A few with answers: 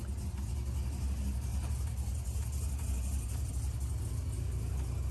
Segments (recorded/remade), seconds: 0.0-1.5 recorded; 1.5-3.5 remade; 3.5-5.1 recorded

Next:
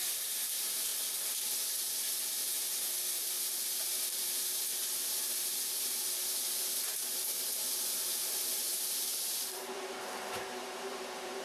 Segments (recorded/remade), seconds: 0.0-0.9 remade; 0.9-3.8 recorded; 3.8-11.4 remade

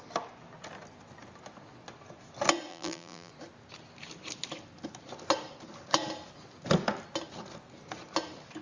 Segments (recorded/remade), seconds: 0.0-2.7 recorded; 2.7-3.3 remade; 3.3-8.6 recorded

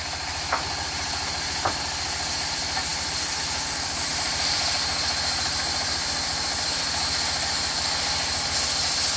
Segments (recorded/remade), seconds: 0.0-2.9 recorded; 2.9-7.1 remade; 7.1-9.2 recorded

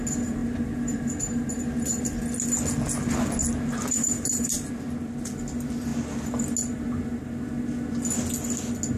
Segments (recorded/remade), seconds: 0.0-0.4 recorded; 0.4-2.0 remade; 2.0-3.4 recorded; 3.4-4.7 remade; 4.7-9.0 recorded